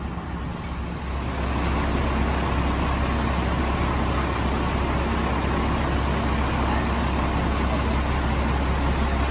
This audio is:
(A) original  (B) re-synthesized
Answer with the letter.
A